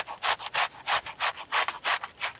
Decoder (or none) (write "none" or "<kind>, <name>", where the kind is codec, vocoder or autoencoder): none